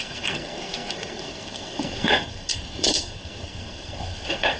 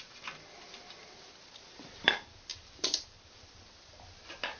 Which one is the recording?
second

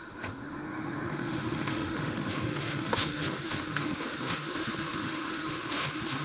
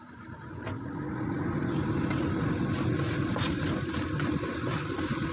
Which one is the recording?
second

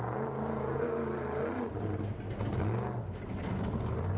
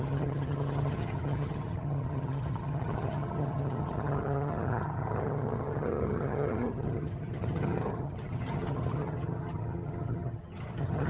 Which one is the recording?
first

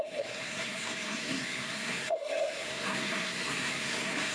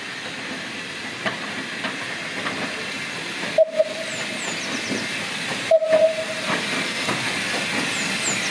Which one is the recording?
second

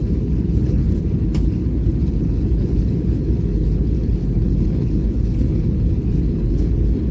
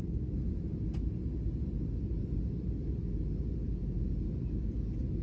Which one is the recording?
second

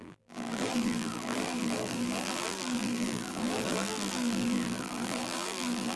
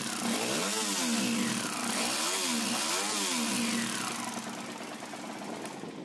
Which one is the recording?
second